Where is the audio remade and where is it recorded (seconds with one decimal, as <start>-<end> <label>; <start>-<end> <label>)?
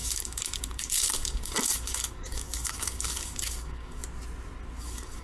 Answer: 0.0-4.0 remade; 4.0-4.8 recorded; 4.8-5.2 remade